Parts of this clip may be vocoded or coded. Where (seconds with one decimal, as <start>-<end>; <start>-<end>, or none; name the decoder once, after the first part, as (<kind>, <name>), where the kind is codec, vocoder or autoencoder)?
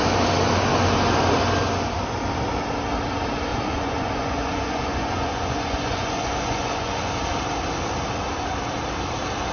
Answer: 3.5-7.1 (vocoder, Vocos)